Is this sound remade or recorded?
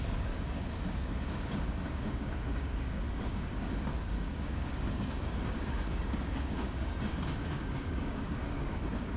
remade